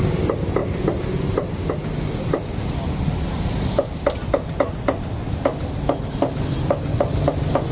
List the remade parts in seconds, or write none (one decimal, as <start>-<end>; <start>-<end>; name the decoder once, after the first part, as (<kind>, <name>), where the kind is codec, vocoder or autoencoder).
none